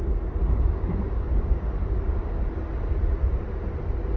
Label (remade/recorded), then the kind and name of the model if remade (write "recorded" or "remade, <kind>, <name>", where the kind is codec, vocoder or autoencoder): recorded